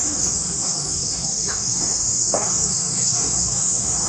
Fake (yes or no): yes